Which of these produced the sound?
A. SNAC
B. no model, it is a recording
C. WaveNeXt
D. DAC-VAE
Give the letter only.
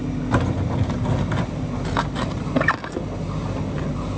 B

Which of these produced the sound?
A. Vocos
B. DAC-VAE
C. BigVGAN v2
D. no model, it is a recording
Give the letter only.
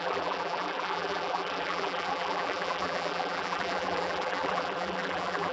C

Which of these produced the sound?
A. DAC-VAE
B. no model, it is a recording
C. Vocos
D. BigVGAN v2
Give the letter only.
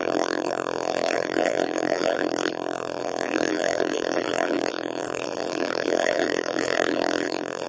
D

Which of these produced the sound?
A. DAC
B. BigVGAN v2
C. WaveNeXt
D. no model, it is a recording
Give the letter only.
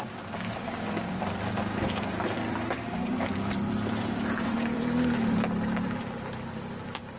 B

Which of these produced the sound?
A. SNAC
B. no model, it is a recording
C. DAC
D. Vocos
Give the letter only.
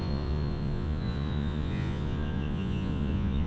D